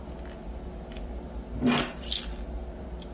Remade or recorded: recorded